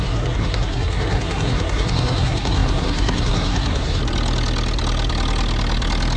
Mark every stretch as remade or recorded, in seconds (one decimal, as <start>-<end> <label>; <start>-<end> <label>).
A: 0.0-4.0 remade; 4.0-6.2 recorded